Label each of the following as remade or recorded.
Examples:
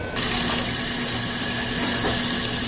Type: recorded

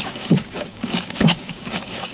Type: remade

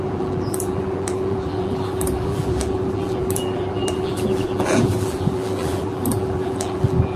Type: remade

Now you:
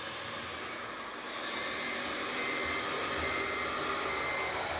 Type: recorded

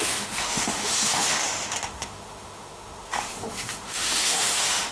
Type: remade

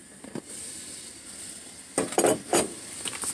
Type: recorded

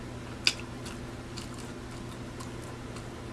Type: recorded